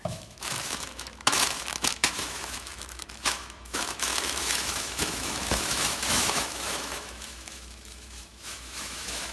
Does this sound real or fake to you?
fake